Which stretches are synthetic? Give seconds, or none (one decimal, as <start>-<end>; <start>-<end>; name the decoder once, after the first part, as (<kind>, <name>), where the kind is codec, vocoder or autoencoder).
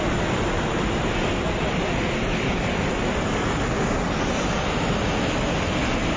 none